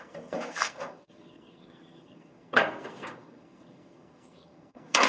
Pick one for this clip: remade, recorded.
remade